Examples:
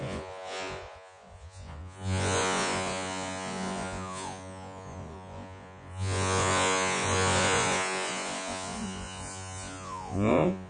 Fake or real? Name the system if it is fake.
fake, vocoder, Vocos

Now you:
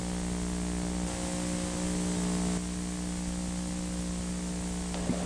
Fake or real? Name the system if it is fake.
real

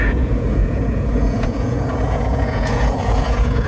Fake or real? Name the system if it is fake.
fake, vocoder, Vocos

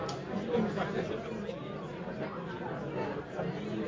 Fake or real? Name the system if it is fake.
real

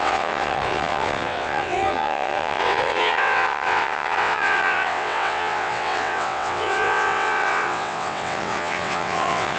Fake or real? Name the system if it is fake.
fake, vocoder, WaveNeXt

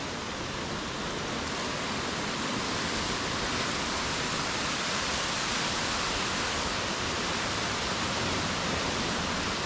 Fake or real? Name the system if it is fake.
real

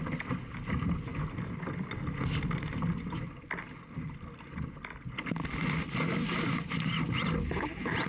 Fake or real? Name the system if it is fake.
real